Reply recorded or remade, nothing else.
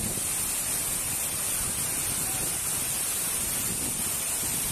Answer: recorded